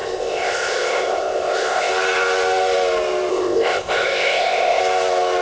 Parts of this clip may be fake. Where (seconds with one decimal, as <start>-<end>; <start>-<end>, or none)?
0.0-1.9; 3.3-4.8